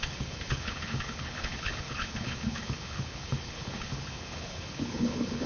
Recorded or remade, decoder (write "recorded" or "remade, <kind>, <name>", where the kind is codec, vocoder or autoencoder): remade, codec, HILCodec